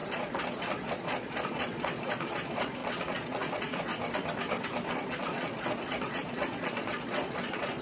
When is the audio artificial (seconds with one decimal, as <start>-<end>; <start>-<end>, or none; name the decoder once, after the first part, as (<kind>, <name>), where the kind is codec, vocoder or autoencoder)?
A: 0.0-3.9 (vocoder, Vocos); 4.9-7.8